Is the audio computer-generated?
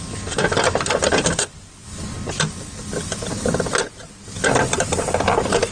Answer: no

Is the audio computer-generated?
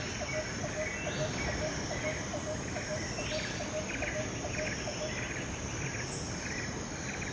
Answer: no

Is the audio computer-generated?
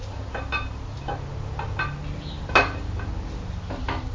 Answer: no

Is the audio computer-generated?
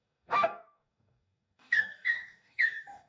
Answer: yes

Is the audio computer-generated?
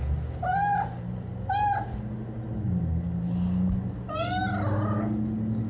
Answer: no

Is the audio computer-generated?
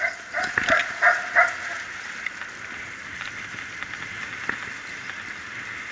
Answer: no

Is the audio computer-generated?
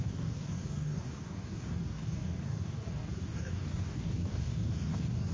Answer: yes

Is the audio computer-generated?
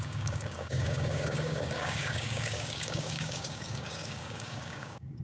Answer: yes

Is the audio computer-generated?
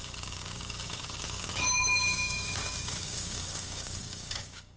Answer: yes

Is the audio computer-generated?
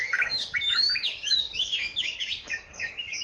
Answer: yes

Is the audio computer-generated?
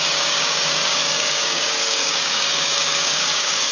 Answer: yes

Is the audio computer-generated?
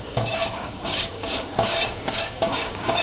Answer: yes